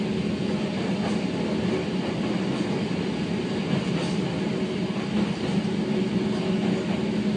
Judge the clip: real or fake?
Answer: real